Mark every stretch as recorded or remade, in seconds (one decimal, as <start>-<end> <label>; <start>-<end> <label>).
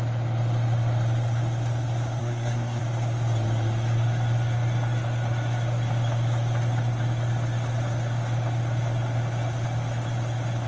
0.0-2.2 recorded; 2.2-2.8 remade; 2.8-10.7 recorded